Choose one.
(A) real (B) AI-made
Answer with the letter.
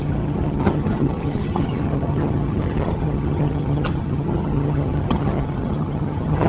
B